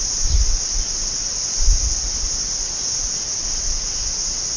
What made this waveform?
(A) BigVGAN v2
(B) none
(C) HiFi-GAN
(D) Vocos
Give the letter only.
B